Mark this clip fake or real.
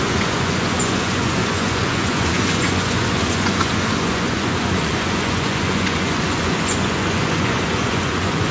fake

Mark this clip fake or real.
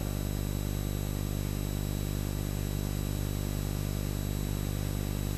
real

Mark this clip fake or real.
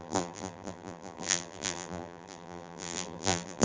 fake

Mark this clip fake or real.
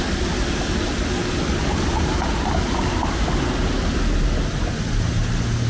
real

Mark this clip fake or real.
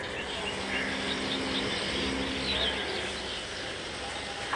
real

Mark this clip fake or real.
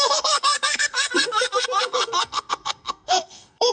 fake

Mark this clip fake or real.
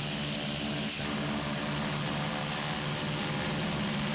real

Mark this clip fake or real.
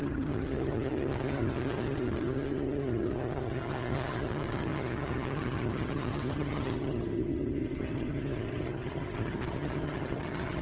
fake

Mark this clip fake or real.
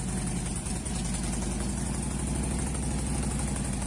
real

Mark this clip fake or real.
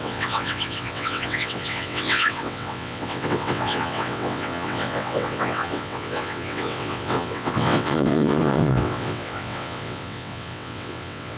fake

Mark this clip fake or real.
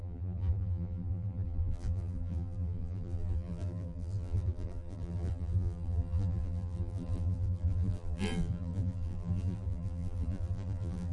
fake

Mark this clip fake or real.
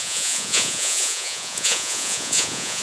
fake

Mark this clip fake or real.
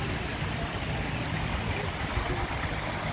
real